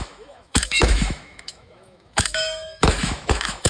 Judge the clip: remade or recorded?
remade